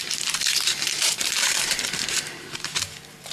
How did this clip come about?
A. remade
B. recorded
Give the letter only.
A